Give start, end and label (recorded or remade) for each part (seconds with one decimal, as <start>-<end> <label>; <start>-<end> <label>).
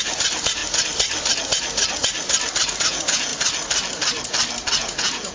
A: 0.0-0.6 remade; 0.6-2.8 recorded; 2.8-3.3 remade; 3.3-4.8 recorded; 4.8-5.3 remade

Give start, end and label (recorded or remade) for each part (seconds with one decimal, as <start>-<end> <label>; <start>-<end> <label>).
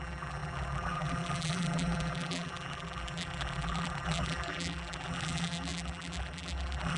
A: 0.0-7.0 remade